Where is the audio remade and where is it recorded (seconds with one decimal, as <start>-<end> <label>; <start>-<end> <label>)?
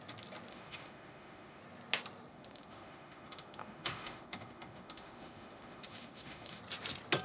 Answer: 0.0-0.5 recorded; 0.5-1.6 remade; 1.6-2.3 recorded; 2.3-6.6 remade; 6.6-7.2 recorded